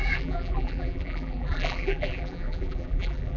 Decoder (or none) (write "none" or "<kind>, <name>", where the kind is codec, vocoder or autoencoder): vocoder, BigVGAN v2